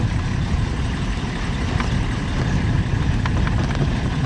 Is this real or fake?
real